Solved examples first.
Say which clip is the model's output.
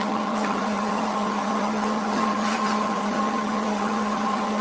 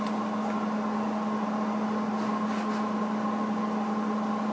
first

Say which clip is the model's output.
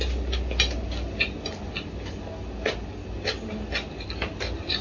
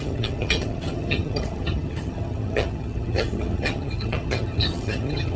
second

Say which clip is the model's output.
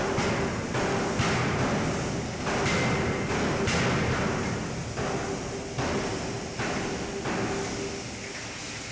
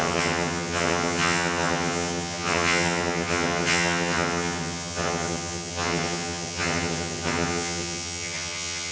second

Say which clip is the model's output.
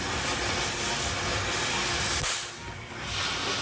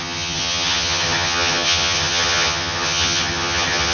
second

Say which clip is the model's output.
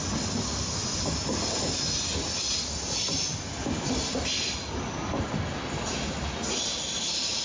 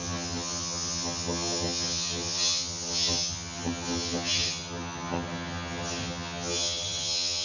second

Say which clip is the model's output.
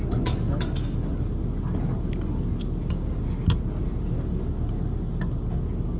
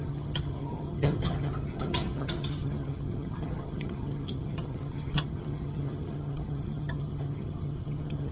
second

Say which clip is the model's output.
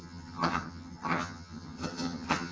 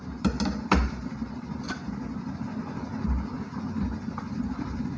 first